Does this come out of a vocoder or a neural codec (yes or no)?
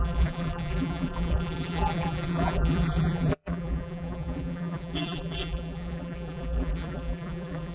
yes